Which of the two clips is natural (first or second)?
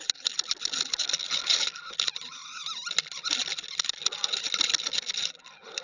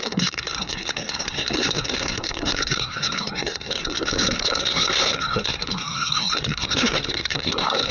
first